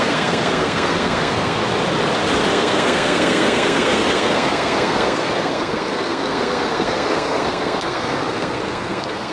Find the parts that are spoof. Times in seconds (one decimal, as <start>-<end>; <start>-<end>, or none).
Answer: 0.0-1.6; 2.5-9.3